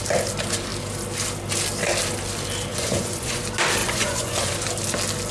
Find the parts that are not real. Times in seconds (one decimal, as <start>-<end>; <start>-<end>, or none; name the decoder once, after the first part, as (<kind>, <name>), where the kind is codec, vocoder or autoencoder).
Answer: 2.7-3.4 (vocoder, Vocos); 3.8-4.5